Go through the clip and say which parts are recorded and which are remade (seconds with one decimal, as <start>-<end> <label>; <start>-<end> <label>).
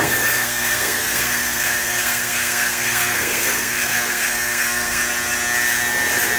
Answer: 0.0-5.0 remade; 5.0-6.4 recorded